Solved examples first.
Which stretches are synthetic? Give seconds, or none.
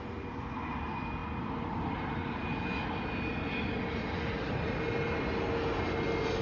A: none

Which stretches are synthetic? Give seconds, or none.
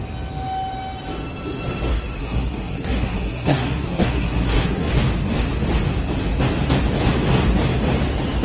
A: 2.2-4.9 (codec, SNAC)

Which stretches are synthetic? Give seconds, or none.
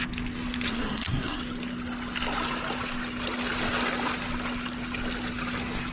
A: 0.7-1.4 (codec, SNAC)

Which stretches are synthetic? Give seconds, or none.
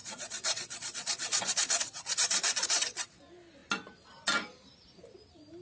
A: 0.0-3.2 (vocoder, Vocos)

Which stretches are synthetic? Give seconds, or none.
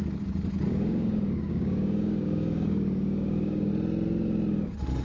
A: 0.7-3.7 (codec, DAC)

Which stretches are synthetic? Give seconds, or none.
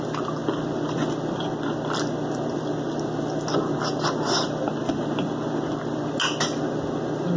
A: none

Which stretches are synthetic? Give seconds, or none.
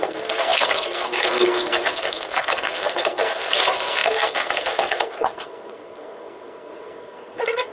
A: 0.0-7.7 (codec, SNAC)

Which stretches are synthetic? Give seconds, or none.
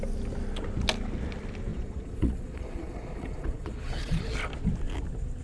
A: 1.7-4.2 (vocoder, Vocos)